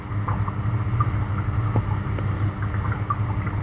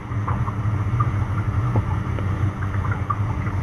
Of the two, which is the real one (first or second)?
first